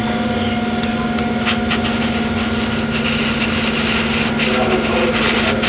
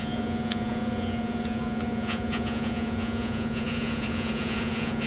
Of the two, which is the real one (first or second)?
first